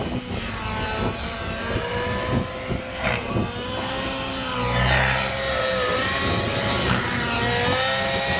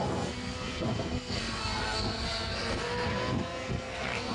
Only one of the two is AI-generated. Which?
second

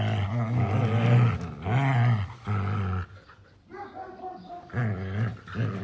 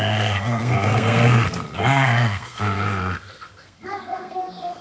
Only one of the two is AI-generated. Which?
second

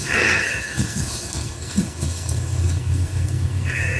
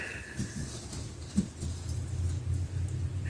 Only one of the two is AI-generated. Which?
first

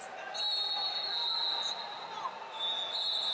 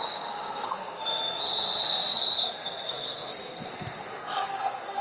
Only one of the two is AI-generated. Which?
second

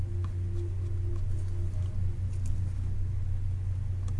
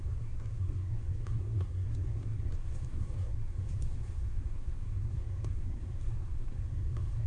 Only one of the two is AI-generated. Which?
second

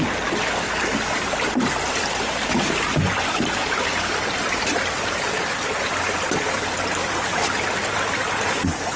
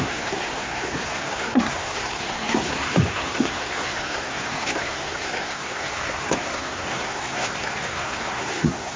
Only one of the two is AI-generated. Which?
second